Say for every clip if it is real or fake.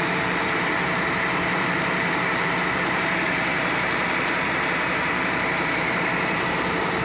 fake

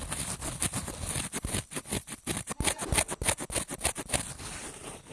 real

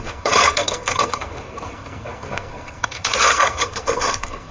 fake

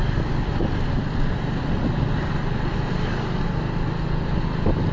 real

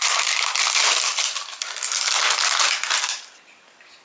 real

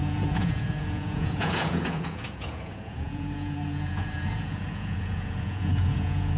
fake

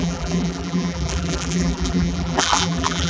fake